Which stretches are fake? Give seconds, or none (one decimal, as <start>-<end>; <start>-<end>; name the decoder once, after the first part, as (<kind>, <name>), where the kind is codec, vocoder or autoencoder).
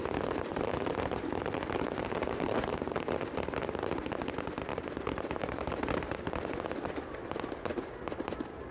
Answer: 0.5-4.0 (vocoder, BigVGAN v2); 4.7-6.3